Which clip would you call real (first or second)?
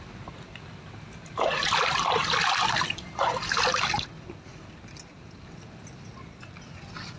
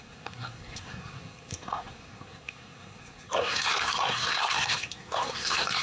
first